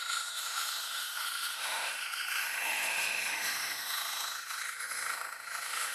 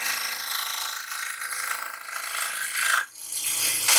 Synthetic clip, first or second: first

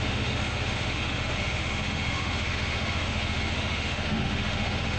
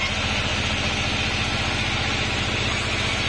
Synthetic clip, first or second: first